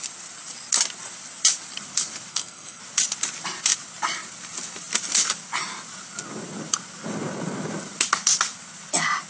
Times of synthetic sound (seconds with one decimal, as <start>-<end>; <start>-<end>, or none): 2.3-2.8